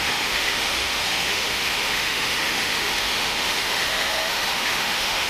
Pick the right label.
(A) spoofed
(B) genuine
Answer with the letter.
A